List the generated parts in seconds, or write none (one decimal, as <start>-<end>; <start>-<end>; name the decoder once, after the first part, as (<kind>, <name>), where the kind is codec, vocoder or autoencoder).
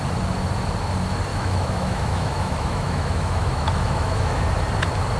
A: 1.3-4.4 (autoencoder, DAC-VAE)